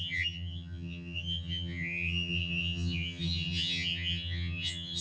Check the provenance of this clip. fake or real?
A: fake